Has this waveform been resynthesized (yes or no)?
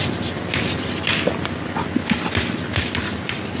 no